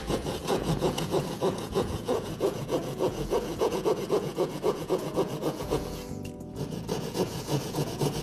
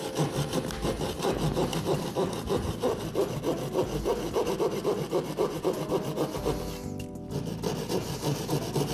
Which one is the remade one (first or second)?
first